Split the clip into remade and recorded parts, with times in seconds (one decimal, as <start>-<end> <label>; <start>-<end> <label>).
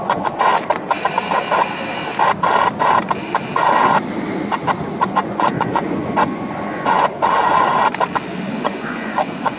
0.0-0.5 remade; 0.5-5.0 recorded; 5.0-7.7 remade; 7.7-8.5 recorded; 8.5-9.6 remade